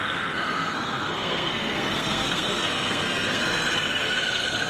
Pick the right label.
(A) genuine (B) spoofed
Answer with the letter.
B